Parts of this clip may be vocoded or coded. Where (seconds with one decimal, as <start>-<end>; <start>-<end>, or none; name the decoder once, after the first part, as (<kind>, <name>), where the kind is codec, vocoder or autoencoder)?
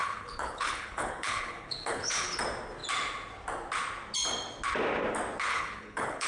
0.0-2.4 (codec, HILCodec); 5.5-6.3